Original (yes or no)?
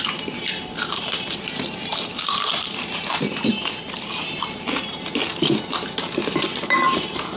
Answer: no